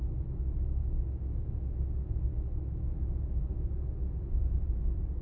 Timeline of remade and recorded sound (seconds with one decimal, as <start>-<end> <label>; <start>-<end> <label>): 0.0-0.8 recorded; 0.8-3.9 remade; 3.9-5.2 recorded